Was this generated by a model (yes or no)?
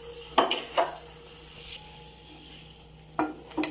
no